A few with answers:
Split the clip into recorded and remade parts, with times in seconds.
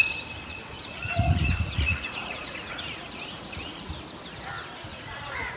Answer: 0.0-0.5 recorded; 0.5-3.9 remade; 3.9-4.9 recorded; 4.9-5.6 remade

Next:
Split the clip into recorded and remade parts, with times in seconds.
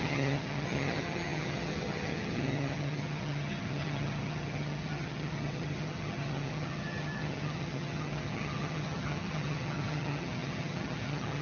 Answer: 0.0-11.4 remade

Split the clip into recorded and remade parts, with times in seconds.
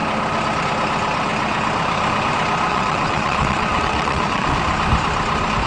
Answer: 0.0-2.7 recorded; 2.7-4.6 remade; 4.6-5.7 recorded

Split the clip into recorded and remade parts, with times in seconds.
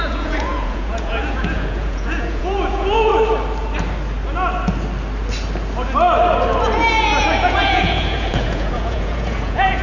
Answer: 0.0-3.1 remade; 3.1-7.2 recorded; 7.2-9.8 remade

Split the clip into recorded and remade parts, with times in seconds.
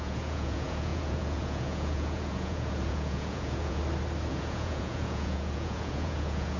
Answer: 0.0-3.8 remade; 3.8-4.3 recorded; 4.3-6.6 remade